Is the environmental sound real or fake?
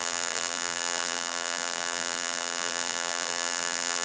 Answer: fake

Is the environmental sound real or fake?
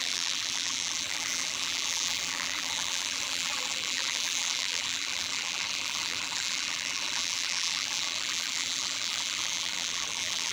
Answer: fake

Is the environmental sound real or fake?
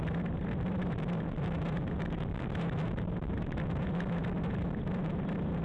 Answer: fake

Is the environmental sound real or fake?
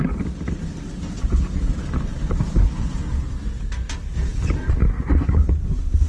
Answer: real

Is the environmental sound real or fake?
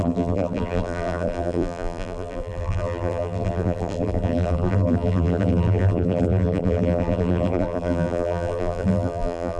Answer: fake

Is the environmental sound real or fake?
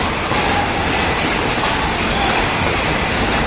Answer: fake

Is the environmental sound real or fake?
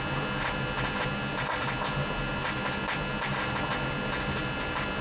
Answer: real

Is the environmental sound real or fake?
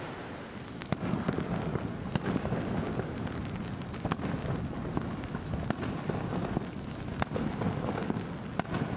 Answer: real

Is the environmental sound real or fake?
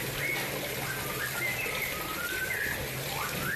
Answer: real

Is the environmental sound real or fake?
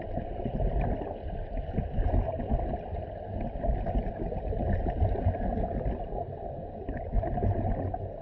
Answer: real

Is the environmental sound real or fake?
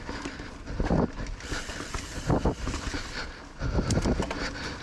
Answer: real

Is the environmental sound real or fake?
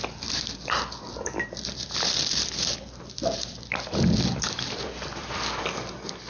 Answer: fake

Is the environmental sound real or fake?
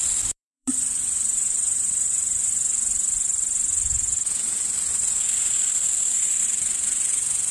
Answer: fake